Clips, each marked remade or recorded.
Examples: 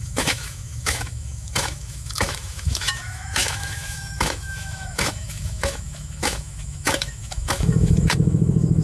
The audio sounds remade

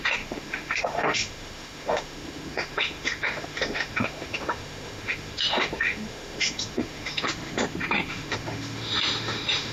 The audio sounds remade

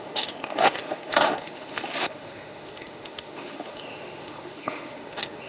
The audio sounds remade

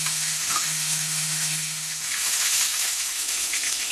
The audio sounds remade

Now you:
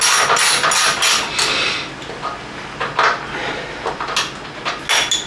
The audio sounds recorded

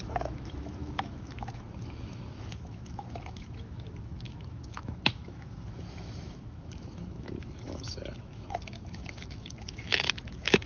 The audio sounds remade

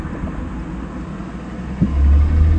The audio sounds recorded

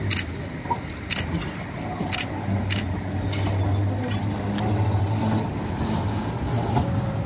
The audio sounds recorded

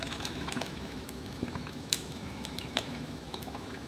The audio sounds remade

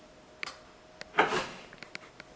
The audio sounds recorded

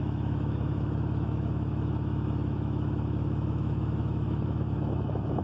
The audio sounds remade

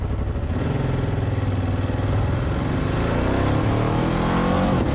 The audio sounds recorded